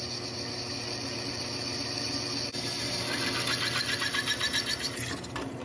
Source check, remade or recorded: recorded